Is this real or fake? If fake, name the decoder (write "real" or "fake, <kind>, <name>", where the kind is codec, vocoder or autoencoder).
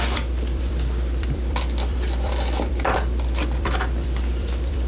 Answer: fake, vocoder, BigVGAN v2